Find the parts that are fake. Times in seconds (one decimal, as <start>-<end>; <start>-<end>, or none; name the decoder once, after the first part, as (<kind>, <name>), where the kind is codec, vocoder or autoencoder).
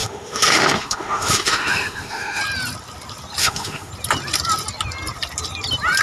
0.0-2.4 (autoencoder, DAC-VAE); 3.4-3.9